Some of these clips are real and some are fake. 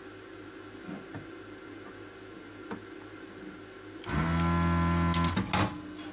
real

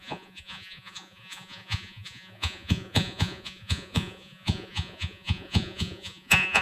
fake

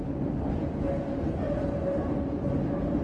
real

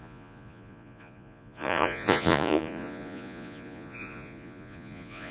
fake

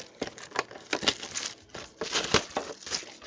real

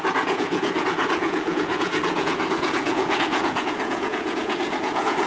fake